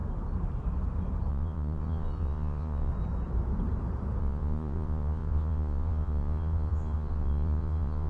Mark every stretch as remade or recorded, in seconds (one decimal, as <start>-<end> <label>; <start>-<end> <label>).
0.0-1.3 recorded; 1.3-2.9 remade; 2.9-4.2 recorded; 4.2-8.1 remade